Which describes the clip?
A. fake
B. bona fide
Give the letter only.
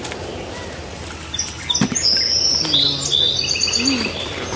B